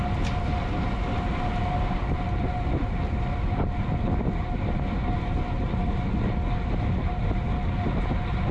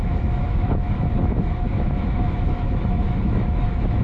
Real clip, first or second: first